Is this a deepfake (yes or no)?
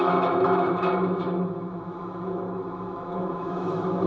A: yes